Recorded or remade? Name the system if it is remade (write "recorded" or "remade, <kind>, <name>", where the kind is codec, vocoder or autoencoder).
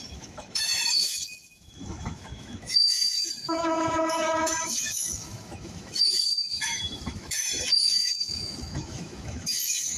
remade, autoencoder, DAC-VAE